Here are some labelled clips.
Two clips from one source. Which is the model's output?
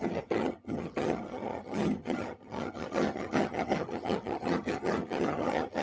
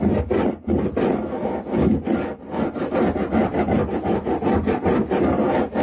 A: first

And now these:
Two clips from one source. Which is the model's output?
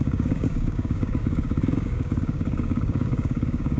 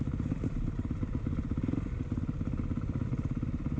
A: first